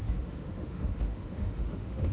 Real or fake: fake